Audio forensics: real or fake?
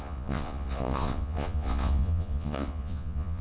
fake